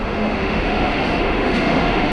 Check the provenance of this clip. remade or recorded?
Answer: remade